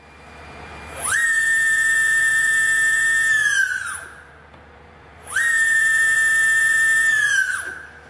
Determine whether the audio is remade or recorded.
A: remade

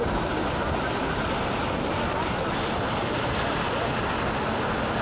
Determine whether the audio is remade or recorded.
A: recorded